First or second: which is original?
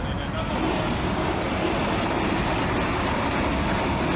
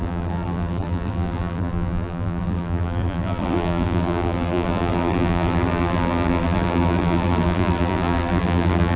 first